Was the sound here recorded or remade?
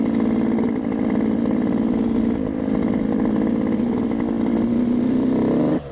remade